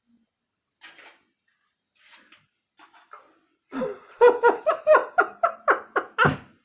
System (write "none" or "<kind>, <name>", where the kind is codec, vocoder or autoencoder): none